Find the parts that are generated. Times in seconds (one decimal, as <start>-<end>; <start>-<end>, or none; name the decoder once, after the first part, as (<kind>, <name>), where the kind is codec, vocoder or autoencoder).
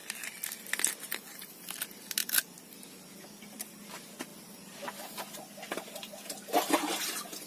none